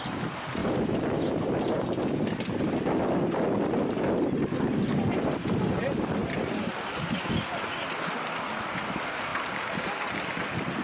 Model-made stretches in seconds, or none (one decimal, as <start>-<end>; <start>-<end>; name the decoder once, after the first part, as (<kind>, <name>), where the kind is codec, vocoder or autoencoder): 0.6-2.1 (vocoder, BigVGAN v2); 6.2-7.3